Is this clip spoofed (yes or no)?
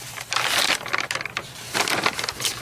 no